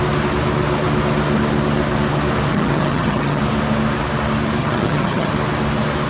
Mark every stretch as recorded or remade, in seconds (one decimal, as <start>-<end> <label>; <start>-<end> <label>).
0.0-2.5 recorded; 2.5-3.4 remade; 3.4-4.6 recorded; 4.6-5.3 remade; 5.3-6.1 recorded